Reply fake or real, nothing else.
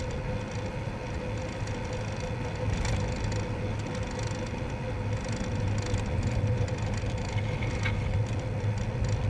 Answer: real